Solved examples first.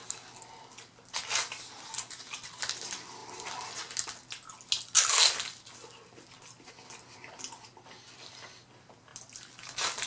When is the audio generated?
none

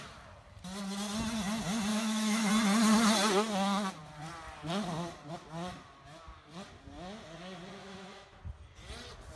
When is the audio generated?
1.9-2.5 (autoencoder, DAC-VAE); 7.8-8.4

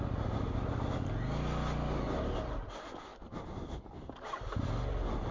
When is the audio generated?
none

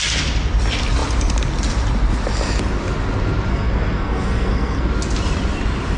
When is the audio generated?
3.5-4.9 (codec, SNAC)

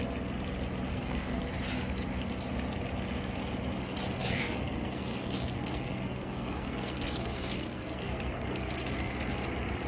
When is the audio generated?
0.9-1.4 (codec, SNAC); 4.2-9.3